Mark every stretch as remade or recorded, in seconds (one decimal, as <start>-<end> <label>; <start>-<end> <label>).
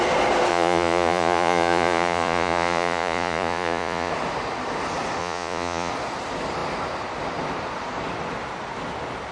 0.0-0.5 recorded; 0.5-4.1 remade; 4.1-5.2 recorded; 5.2-5.9 remade; 5.9-9.3 recorded